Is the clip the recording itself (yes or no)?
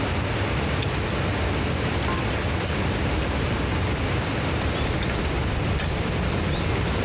yes